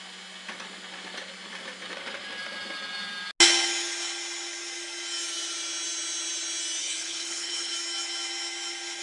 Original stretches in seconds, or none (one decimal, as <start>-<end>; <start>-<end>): 0.0-6.8; 7.7-9.0

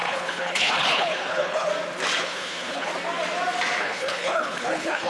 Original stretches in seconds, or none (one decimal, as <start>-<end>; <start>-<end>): 1.7-2.2; 2.9-3.8

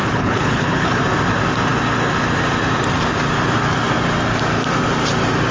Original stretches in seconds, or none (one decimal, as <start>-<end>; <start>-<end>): 1.0-5.5

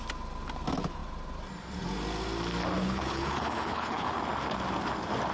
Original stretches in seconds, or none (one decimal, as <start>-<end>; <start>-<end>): 0.0-2.8; 4.2-5.3

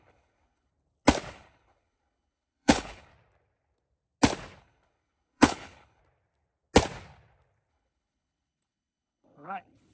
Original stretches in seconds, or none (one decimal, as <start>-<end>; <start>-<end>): 0.7-1.3; 3.1-4.6; 6.0-7.7